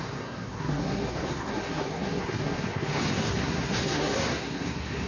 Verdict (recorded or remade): remade